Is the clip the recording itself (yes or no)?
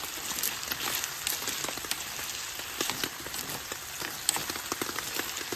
yes